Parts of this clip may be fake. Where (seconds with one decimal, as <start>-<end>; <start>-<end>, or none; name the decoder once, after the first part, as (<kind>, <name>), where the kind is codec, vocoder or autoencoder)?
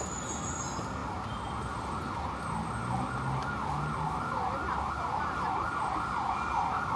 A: none